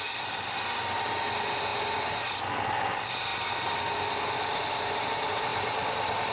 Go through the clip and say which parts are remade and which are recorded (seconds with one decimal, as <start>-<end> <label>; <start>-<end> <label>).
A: 0.0-6.3 recorded

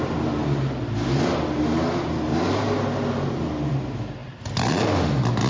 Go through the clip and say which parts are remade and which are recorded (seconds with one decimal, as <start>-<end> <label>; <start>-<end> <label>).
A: 0.0-5.5 recorded

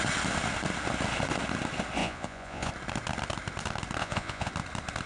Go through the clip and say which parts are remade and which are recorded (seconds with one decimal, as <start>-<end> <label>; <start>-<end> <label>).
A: 0.0-2.0 recorded; 2.0-2.7 remade; 2.7-4.0 recorded; 4.0-4.5 remade; 4.5-5.1 recorded